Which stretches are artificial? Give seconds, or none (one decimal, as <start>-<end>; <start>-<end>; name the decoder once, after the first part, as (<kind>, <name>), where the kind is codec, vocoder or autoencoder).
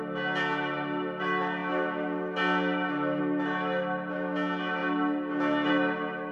none